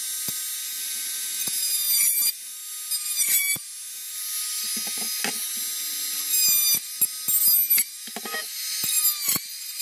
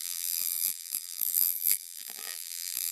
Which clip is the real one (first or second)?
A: first